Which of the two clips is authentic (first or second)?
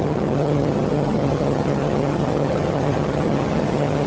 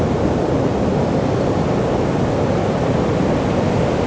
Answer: second